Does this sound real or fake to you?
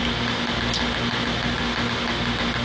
real